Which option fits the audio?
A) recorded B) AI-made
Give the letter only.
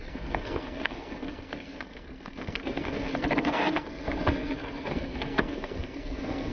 B